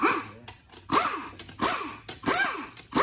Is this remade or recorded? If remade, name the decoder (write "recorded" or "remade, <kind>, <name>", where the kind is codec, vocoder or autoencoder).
recorded